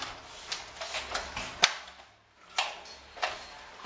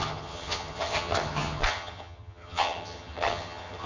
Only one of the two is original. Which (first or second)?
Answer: first